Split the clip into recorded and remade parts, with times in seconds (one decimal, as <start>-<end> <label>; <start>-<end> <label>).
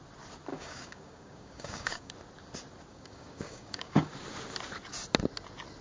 0.0-0.5 recorded; 0.5-2.1 remade; 2.1-2.9 recorded; 2.9-4.1 remade; 4.1-5.8 recorded